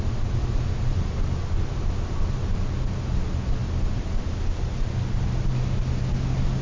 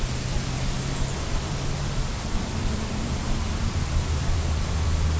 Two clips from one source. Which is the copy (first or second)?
second